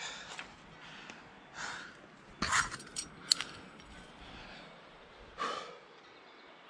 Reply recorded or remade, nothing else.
recorded